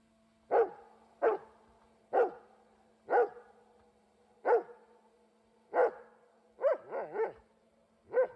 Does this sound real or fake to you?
real